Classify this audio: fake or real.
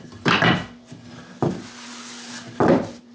real